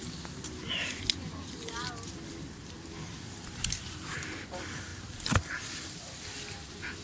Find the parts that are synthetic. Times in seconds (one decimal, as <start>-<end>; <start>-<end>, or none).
4.9-6.0